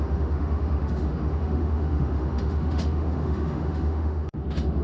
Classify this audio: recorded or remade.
remade